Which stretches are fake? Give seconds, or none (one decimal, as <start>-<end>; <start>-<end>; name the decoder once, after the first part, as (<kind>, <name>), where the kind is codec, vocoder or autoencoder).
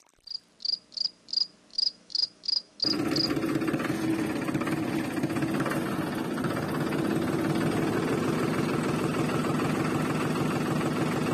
1.7-2.8 (autoencoder, DAC-VAE)